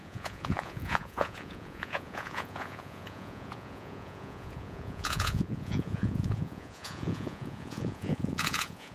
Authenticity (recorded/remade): remade